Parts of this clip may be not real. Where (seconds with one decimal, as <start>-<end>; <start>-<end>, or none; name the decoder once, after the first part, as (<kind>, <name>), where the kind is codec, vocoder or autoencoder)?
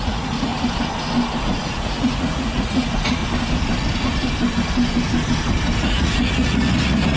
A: 0.0-0.5 (vocoder, Vocos); 1.4-3.2; 5.8-7.2